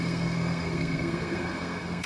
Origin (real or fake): fake